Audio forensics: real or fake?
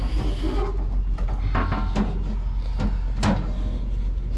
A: real